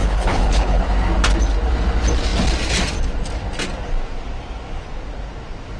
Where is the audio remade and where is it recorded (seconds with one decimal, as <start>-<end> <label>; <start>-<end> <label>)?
0.0-0.8 remade; 0.8-5.8 recorded